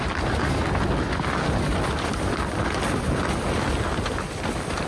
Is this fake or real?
real